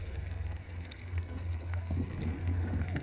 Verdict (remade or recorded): remade